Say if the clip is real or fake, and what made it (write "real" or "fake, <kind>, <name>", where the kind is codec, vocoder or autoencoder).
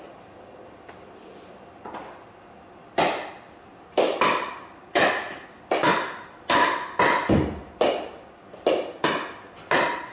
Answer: real